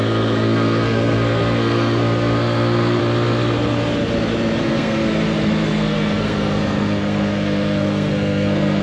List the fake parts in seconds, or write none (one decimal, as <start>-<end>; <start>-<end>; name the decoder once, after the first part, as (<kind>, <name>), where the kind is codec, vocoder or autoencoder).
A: 0.0-3.0 (codec, SNAC); 4.6-8.8

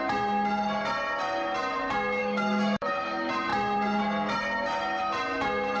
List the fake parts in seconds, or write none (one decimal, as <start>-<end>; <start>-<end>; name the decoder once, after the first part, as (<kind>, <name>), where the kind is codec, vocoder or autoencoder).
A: 2.2-2.9 (autoencoder, DAC-VAE)

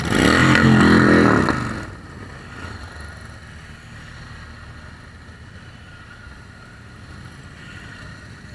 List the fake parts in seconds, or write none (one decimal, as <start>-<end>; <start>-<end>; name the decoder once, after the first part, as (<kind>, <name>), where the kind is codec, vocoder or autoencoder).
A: none

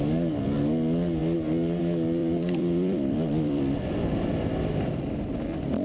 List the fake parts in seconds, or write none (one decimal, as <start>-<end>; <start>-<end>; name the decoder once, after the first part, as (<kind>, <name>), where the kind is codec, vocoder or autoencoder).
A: 2.2-5.0 (vocoder, BigVGAN v2)

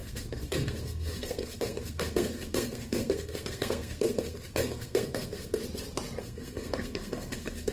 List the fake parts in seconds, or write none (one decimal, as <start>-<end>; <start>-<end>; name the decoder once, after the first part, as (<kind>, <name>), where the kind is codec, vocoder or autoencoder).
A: 0.0-5.6 (codec, SNAC); 6.2-7.7

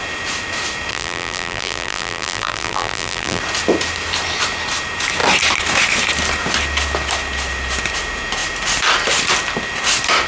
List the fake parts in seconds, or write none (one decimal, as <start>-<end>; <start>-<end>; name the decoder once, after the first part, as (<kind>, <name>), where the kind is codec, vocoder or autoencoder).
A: 0.9-3.4 (vocoder, BigVGAN v2)

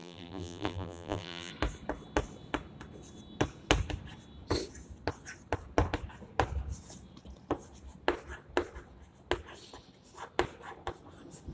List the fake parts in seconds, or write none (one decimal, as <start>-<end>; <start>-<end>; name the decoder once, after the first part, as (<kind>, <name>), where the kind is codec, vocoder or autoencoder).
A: 0.0-1.5 (vocoder, BigVGAN v2)